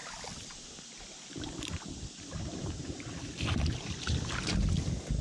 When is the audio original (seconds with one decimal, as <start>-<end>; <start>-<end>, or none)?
0.0-5.2